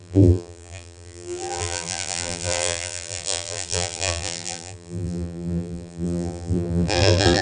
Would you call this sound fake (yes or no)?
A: yes